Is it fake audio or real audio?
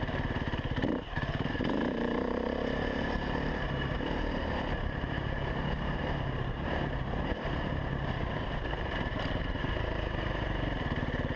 fake